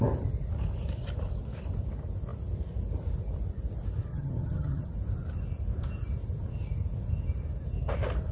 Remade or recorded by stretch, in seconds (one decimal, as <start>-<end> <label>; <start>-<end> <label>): 0.0-4.1 recorded; 4.1-4.9 remade; 4.9-8.3 recorded